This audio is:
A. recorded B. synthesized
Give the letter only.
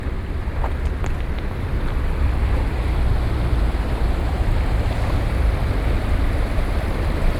B